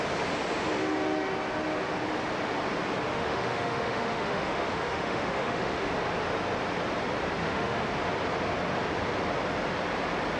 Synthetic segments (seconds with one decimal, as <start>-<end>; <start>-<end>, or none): 3.1-5.9; 7.4-7.9